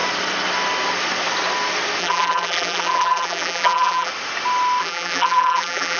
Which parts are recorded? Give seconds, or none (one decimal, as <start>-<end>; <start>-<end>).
0.0-2.0; 4.1-4.8

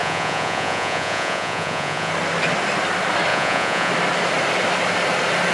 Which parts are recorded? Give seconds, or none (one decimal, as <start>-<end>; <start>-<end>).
2.1-3.3; 3.9-5.5

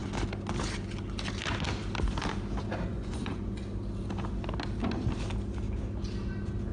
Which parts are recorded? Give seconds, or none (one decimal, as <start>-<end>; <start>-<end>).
0.0-2.9; 3.6-6.7

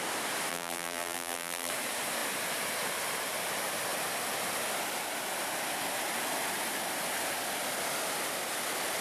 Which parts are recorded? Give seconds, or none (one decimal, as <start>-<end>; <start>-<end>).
0.0-0.5; 1.7-9.0